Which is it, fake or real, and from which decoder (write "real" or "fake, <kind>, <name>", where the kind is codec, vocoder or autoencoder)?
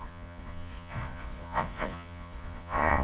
fake, vocoder, Vocos